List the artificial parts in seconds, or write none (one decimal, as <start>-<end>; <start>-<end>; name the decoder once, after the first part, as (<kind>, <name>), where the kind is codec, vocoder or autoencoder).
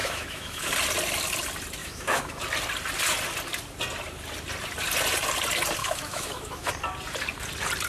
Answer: 0.0-0.7 (autoencoder, DAC-VAE); 1.8-2.4; 5.8-6.7